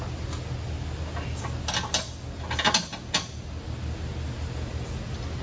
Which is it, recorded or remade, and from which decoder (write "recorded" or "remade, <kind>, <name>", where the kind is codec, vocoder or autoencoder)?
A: recorded